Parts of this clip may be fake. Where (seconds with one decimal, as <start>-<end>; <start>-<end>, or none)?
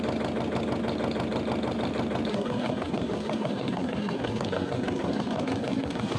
2.3-6.2